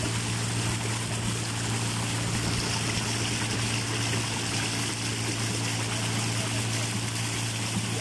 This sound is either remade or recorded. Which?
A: recorded